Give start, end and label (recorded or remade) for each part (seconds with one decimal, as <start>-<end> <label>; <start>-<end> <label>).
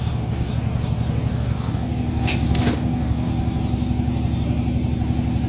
0.0-0.5 remade; 0.5-1.3 recorded; 1.3-3.3 remade; 3.3-5.5 recorded